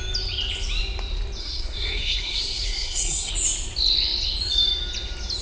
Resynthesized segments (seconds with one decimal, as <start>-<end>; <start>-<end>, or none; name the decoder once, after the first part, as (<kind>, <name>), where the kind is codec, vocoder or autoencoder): 1.4-3.3 (codec, SNAC)